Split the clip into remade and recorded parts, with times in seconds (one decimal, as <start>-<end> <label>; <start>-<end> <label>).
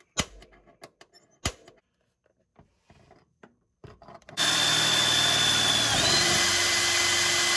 0.0-2.5 recorded; 2.5-6.8 remade; 6.8-7.6 recorded